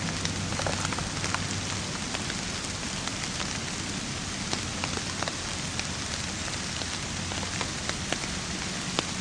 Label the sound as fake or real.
real